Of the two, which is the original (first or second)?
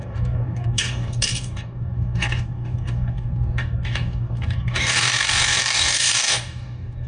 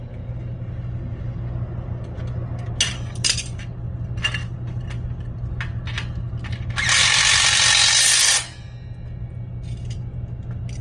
second